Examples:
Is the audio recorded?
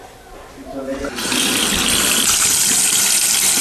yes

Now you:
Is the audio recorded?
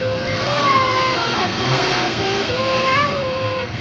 no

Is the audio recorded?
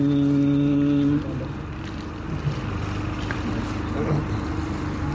yes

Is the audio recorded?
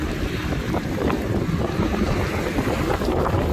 yes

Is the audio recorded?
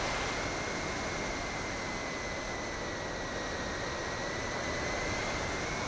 yes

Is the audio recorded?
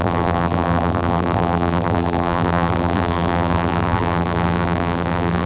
no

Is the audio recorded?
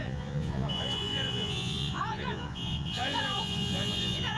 no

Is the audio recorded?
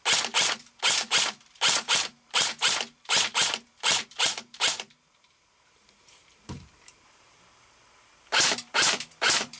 no